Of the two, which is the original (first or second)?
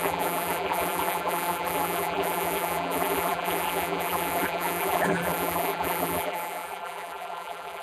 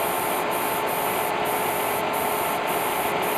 second